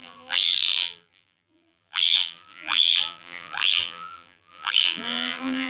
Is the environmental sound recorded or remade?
remade